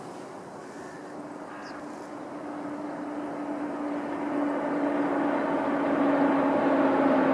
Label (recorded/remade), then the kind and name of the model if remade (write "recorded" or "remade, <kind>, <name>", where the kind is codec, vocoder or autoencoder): recorded